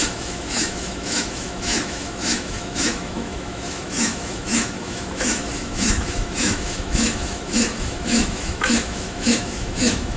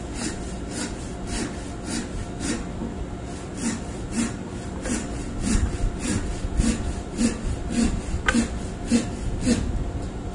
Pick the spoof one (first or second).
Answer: first